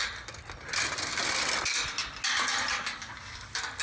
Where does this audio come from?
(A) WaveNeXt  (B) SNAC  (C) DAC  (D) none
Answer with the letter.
D